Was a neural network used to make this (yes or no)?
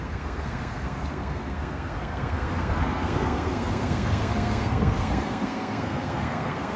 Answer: yes